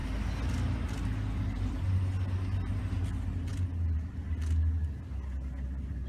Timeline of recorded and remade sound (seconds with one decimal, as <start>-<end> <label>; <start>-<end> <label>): 0.0-6.1 recorded